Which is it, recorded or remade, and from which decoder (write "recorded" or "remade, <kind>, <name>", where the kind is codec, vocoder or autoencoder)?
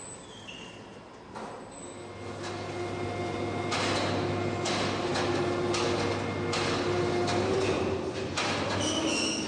recorded